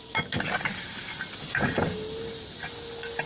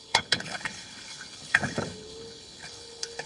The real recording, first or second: first